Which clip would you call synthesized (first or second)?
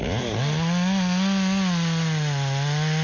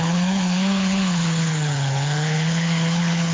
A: second